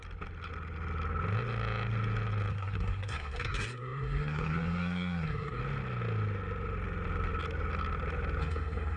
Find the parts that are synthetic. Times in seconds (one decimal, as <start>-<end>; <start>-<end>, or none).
2.5-5.6; 8.4-9.0